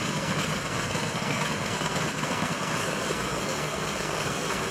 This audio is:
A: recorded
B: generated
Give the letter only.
B